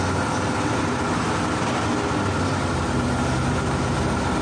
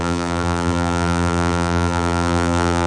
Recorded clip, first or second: first